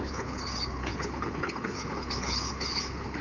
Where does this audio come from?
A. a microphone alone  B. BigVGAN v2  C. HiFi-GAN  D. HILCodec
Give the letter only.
D